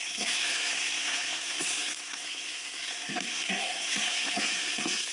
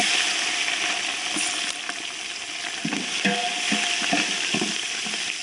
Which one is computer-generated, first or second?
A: first